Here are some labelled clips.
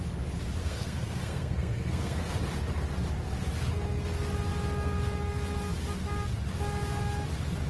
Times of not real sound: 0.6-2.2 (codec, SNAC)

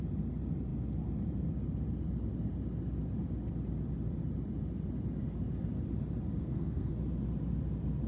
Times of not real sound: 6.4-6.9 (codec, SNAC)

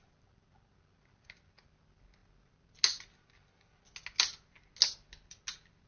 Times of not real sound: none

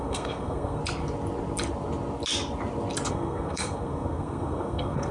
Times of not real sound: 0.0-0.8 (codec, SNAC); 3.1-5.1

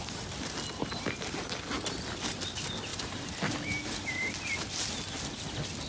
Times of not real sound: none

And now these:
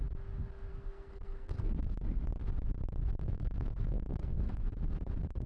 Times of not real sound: 0.7-2.0 (codec, SNAC); 3.2-4.6

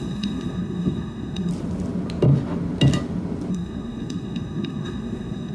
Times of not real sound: 0.0-1.5 (codec, SNAC); 3.5-5.5

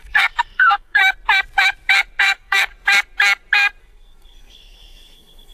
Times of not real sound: 0.0-1.0 (codec, SNAC); 2.2-2.7; 3.8-5.5